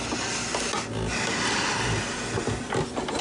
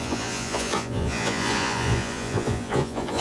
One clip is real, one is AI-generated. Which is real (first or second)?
first